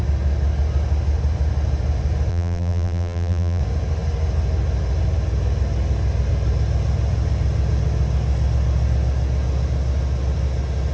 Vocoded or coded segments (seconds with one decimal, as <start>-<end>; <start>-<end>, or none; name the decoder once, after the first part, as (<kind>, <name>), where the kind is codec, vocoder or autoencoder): 2.3-3.6 (vocoder, BigVGAN v2)

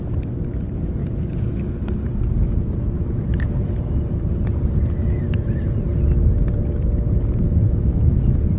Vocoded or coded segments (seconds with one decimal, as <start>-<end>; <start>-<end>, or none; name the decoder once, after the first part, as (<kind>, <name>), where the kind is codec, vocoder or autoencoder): 1.0-6.0 (vocoder, BigVGAN v2)

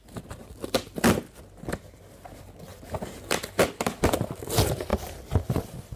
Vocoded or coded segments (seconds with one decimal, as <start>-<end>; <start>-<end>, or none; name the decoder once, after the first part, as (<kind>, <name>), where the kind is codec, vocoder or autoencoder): none

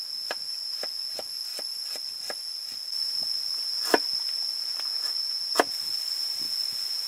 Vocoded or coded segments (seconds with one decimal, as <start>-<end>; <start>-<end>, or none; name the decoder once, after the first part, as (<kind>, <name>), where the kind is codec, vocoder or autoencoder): none

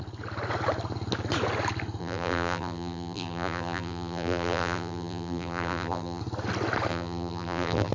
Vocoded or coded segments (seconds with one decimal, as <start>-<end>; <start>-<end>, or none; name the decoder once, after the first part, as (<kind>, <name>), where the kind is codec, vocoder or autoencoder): 2.0-6.2 (vocoder, BigVGAN v2); 6.9-7.9

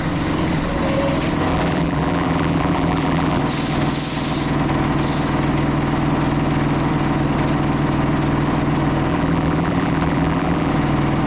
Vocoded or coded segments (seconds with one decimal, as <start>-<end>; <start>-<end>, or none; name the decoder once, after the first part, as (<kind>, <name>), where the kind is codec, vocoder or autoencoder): 1.5-3.4 (vocoder, BigVGAN v2); 9.1-10.7